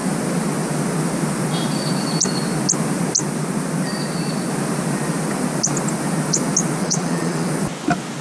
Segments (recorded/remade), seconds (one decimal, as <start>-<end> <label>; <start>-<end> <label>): 0.0-6.8 recorded; 6.8-7.5 remade; 7.5-8.2 recorded